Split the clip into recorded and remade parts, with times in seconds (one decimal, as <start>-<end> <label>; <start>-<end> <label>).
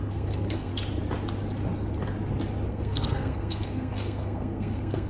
0.0-0.7 remade; 0.7-2.7 recorded; 2.7-5.1 remade